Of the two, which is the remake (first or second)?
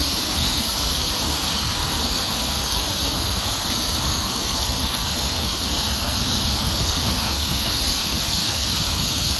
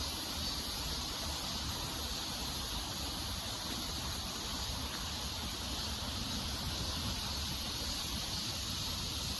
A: first